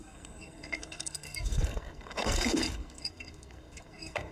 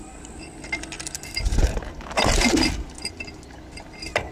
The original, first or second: second